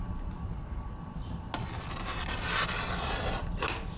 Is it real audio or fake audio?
real